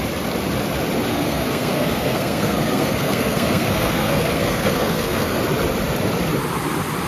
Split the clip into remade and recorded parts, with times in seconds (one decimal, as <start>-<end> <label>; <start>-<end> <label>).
0.0-1.1 recorded; 1.1-5.4 remade; 5.4-7.1 recorded